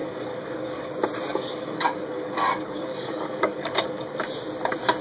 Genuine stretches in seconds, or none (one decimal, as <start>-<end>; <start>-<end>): 0.9-1.3; 4.3-5.0